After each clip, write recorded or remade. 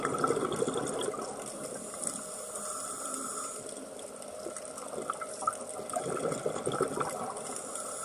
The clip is recorded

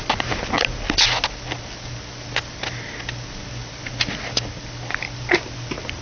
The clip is recorded